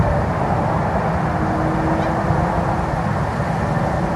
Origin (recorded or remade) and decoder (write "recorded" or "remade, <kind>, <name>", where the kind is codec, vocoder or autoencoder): recorded